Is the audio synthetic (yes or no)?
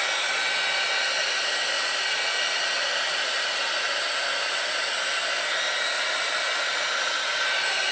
no